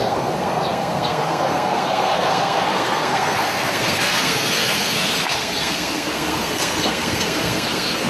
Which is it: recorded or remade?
remade